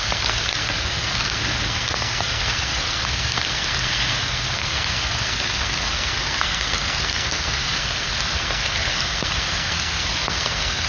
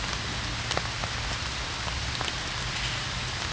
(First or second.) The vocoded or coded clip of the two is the first